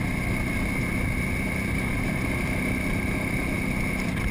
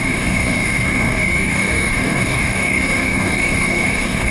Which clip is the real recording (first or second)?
first